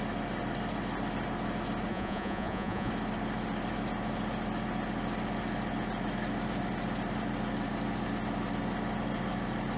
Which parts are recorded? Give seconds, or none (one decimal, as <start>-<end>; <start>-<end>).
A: 0.0-1.9; 2.9-9.8